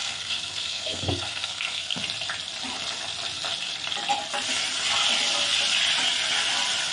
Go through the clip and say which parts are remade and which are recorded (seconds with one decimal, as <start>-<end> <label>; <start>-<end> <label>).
0.0-2.0 remade; 2.0-6.9 recorded